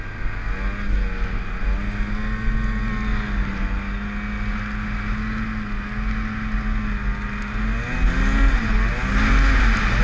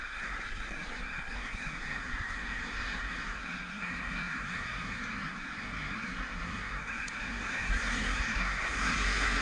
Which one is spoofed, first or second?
second